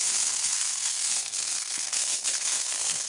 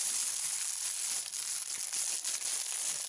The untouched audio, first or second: second